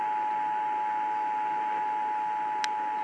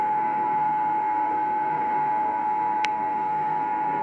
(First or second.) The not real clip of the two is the second